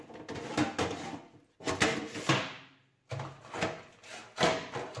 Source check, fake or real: real